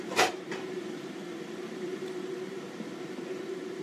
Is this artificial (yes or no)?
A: yes